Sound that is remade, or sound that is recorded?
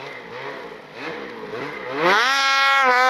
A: recorded